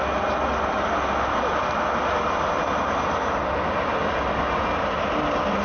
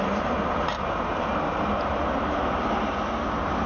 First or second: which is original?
first